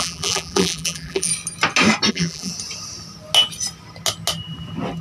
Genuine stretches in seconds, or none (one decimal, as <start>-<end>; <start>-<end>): 1.3-2.1; 2.5-5.0